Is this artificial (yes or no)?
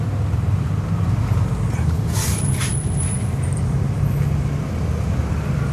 no